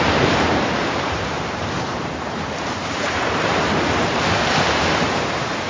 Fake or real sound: fake